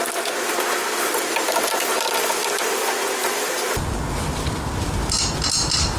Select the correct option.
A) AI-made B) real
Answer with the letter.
B